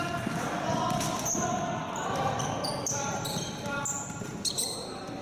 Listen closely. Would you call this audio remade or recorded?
recorded